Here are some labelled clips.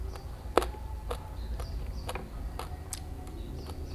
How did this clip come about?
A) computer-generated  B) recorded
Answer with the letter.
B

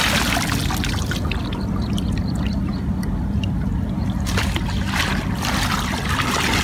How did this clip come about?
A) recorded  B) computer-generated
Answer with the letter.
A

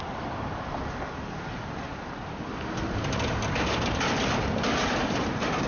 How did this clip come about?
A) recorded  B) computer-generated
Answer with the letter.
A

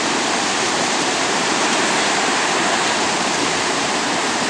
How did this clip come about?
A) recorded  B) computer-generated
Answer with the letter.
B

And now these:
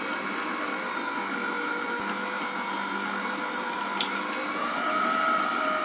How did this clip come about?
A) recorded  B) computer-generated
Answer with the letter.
A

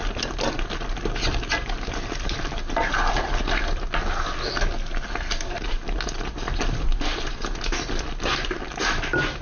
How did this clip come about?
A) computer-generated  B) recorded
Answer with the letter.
B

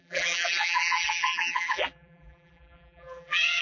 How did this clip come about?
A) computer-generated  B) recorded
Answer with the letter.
A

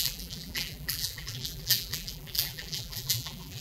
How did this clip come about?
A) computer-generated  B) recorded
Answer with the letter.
A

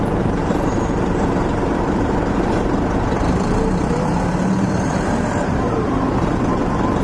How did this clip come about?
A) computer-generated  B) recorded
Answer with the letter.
A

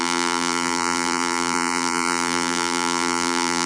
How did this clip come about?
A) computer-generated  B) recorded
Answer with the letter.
A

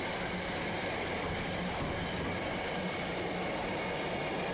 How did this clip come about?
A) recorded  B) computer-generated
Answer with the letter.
A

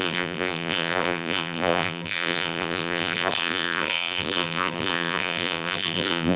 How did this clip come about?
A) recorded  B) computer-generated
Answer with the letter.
B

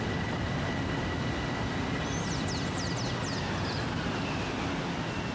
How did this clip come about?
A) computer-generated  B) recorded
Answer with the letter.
B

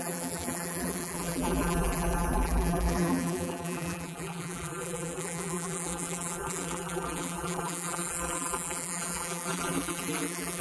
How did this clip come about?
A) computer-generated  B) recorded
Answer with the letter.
A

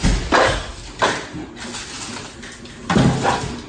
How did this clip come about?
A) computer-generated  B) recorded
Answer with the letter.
B